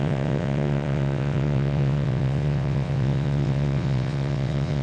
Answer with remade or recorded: remade